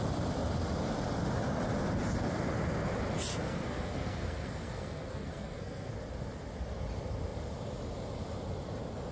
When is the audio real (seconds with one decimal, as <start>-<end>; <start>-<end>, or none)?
0.0-3.3; 5.9-9.1